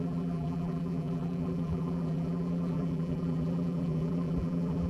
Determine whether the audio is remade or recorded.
remade